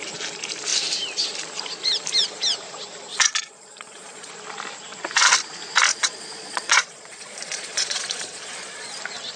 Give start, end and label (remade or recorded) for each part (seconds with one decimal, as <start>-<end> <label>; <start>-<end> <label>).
0.0-3.1 recorded; 3.1-4.3 remade; 4.3-5.9 recorded; 5.9-9.0 remade; 9.0-9.4 recorded